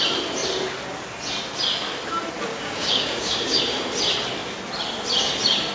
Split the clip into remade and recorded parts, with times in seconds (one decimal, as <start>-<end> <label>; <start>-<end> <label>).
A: 0.0-2.5 recorded; 2.5-3.6 remade; 3.6-5.7 recorded